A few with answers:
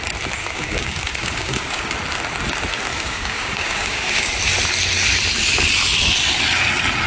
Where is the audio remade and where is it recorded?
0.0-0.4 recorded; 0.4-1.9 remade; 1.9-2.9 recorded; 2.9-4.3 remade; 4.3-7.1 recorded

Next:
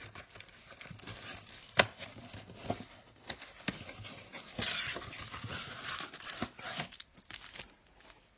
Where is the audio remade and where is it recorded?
0.0-8.4 recorded

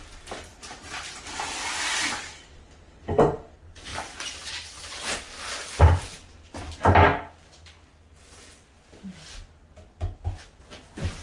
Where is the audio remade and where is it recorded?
0.0-11.2 recorded